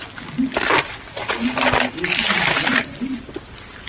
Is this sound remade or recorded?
recorded